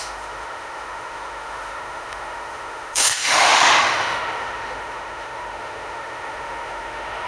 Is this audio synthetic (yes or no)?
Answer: yes